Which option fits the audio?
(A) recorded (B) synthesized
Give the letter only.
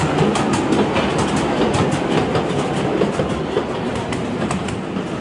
A